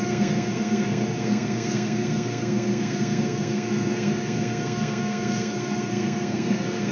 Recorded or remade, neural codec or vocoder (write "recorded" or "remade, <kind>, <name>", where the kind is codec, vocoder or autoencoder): remade, codec, SNAC